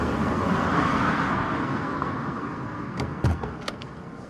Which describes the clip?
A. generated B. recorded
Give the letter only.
A